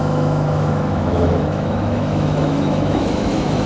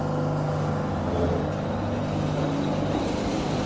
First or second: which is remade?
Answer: first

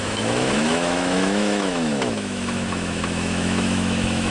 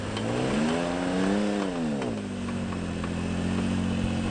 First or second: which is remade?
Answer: first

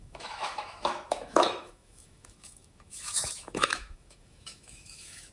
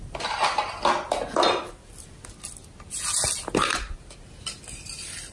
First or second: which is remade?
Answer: first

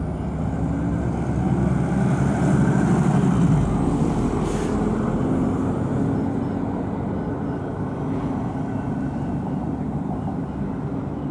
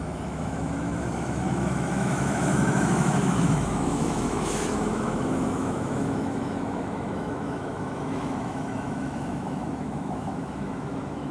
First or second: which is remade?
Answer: second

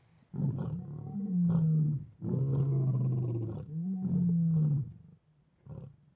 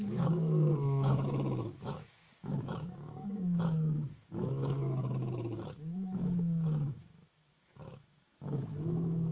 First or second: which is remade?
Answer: second